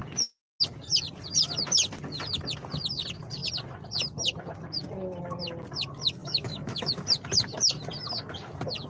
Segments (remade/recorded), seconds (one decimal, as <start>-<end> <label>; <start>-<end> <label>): 0.0-6.2 recorded; 6.2-6.9 remade; 6.9-8.9 recorded